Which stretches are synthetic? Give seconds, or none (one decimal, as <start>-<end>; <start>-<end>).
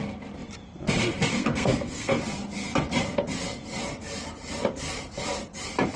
1.3-2.2